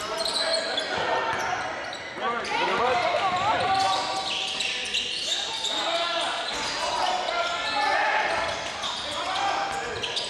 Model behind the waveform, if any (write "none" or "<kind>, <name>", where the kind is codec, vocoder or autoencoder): none